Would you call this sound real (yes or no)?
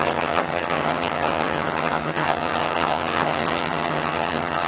no